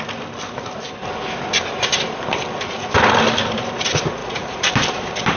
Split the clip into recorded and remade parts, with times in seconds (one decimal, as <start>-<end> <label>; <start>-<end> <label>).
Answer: 0.0-4.2 recorded; 4.2-4.7 remade; 4.7-5.4 recorded